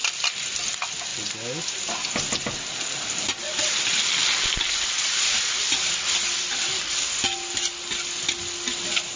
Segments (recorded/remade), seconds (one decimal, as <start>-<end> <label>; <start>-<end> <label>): 0.0-9.2 recorded